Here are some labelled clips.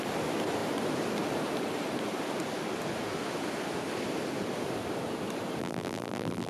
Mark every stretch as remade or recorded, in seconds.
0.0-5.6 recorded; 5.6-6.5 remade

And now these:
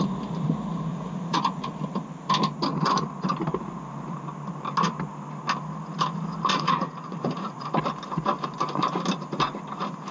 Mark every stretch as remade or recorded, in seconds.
0.0-0.9 recorded; 0.9-1.4 remade; 1.4-6.5 recorded; 6.5-7.7 remade; 7.7-10.1 recorded

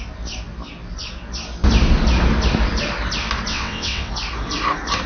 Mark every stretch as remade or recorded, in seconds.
0.0-3.5 recorded; 3.5-4.1 remade; 4.1-5.1 recorded

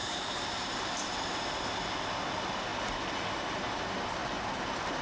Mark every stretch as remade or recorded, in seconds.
0.0-0.5 remade; 0.5-4.2 recorded; 4.2-5.0 remade